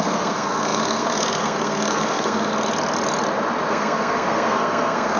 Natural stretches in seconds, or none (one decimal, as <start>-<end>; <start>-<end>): 2.5-3.7